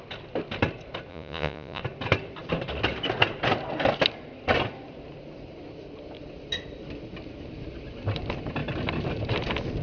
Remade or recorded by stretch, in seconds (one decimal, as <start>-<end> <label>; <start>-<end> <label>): 0.0-1.1 recorded; 1.1-1.8 remade; 1.8-9.8 recorded